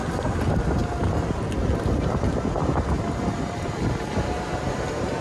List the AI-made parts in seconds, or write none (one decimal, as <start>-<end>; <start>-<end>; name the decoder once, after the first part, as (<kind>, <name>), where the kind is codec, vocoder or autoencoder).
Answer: none